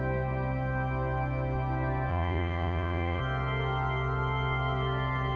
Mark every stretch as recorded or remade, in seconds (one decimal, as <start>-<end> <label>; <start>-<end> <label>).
0.0-2.1 recorded; 2.1-3.2 remade; 3.2-5.4 recorded